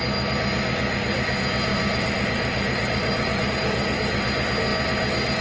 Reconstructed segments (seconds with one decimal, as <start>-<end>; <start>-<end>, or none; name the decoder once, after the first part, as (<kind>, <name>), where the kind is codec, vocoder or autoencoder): 1.7-3.5 (vocoder, BigVGAN v2)